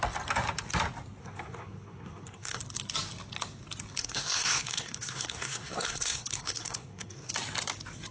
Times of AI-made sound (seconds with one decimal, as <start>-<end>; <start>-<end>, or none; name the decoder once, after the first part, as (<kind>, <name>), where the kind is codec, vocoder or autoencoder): 1.2-2.6 (codec, SNAC); 4.0-7.3